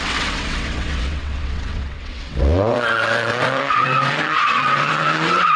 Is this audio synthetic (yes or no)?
yes